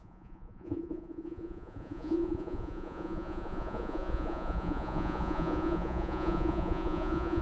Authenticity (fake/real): fake